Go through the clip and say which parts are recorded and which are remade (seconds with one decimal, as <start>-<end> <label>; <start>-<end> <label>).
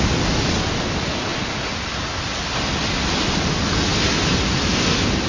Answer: 0.0-5.3 recorded